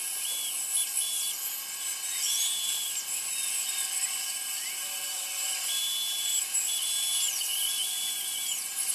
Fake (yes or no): no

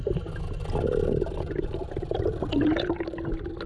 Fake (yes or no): no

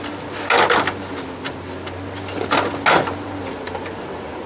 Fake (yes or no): no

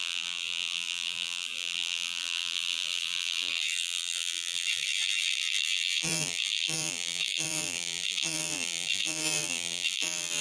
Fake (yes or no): yes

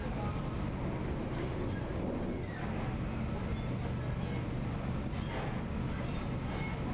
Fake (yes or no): no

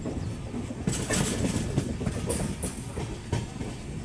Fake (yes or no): no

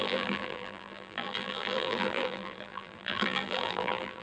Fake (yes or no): yes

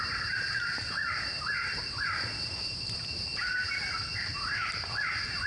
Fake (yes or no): yes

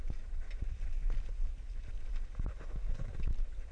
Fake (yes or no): no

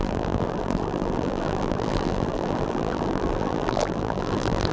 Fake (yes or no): yes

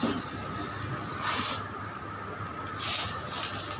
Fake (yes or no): no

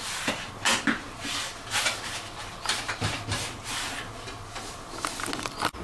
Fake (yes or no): no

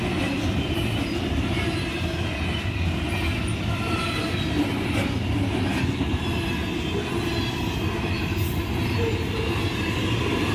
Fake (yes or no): no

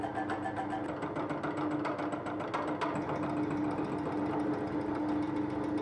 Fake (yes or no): no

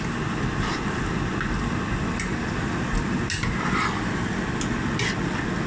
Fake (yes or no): no